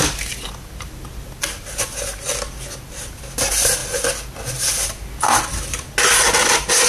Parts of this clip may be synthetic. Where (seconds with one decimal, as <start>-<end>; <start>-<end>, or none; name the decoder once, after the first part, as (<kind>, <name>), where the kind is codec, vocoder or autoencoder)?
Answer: none